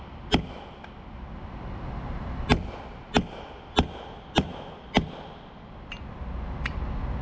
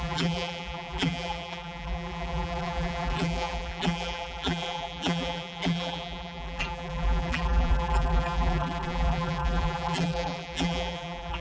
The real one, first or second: first